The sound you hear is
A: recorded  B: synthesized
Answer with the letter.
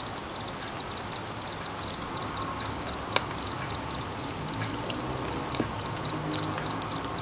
A